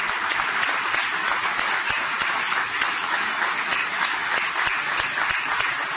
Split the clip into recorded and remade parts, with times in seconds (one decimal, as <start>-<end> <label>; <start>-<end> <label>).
0.0-1.2 recorded; 1.2-4.5 remade; 4.5-6.0 recorded